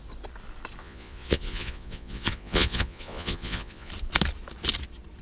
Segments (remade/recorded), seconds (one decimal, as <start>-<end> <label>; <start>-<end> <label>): 0.0-0.8 recorded; 0.8-3.9 remade; 3.9-5.2 recorded